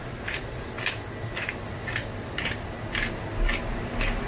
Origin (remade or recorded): recorded